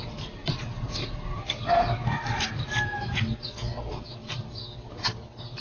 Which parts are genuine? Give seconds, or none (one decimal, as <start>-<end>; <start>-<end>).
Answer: 0.0-5.6